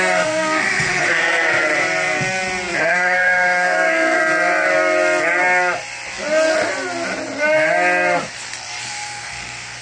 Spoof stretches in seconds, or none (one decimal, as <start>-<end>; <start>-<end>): 0.0-1.2; 2.8-4.2; 8.8-9.8